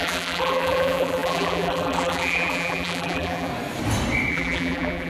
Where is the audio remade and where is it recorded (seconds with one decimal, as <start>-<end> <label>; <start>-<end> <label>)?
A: 0.0-3.5 remade; 3.5-4.3 recorded; 4.3-5.1 remade